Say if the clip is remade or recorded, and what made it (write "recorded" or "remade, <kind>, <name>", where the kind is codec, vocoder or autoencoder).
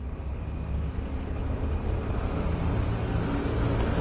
recorded